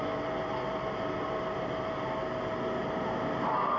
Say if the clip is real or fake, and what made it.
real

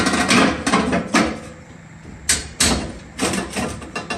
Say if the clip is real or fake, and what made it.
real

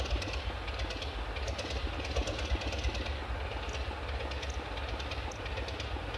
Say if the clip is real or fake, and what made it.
real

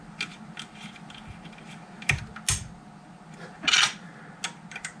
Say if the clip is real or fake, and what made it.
real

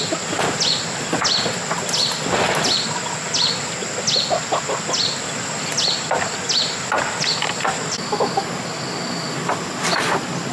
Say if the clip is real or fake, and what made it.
real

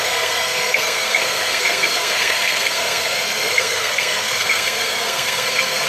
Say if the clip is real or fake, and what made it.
fake, codec, SNAC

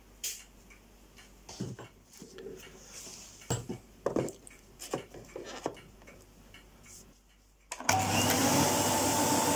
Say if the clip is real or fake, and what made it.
real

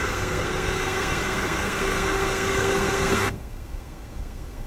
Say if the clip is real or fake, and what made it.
fake, codec, SNAC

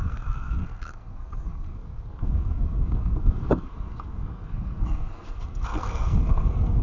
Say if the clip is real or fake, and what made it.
fake, codec, SNAC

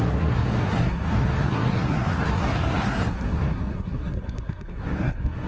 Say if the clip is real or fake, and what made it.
fake, codec, SNAC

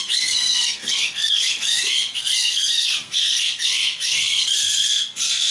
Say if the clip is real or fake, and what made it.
fake, codec, SNAC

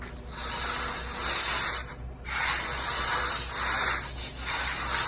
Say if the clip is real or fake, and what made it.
real